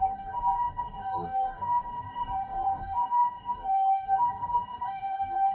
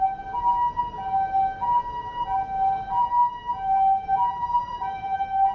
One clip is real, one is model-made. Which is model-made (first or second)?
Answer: first